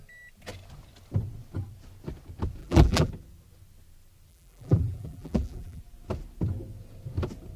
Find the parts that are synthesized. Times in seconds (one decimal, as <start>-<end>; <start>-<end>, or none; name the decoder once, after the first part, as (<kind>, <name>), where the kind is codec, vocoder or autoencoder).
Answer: 2.6-3.1 (vocoder, BigVGAN v2); 4.3-5.8